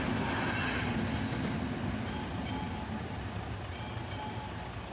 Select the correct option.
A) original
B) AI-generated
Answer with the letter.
A